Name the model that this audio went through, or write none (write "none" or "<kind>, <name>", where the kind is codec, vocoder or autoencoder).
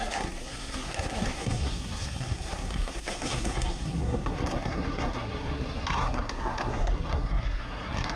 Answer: codec, SNAC